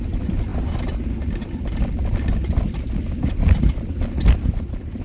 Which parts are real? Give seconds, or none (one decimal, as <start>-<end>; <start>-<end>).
0.0-5.0